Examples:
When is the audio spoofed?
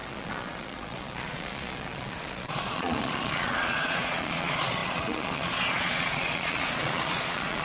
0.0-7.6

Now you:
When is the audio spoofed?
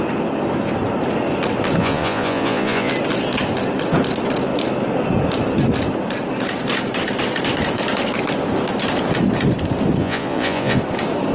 1.8-2.9; 10.0-10.8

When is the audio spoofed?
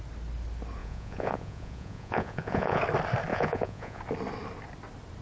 0.8-2.8; 3.3-4.0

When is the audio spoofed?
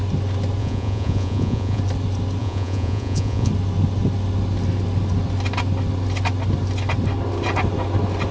0.6-1.8; 2.4-3.5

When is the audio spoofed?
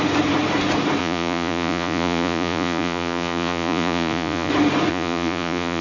1.0-4.5; 4.9-5.8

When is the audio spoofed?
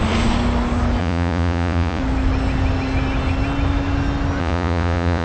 1.0-2.0; 4.4-5.2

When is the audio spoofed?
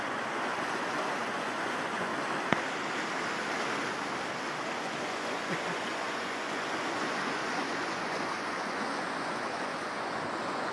0.0-2.1; 4.8-10.7